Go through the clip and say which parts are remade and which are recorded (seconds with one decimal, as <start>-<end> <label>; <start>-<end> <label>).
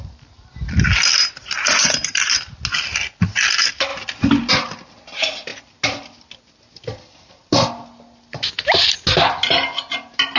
0.0-10.4 recorded